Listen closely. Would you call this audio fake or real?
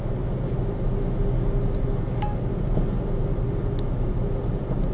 real